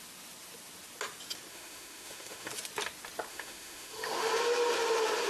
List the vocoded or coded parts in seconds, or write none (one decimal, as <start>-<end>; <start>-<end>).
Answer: 1.5-2.5; 3.3-4.3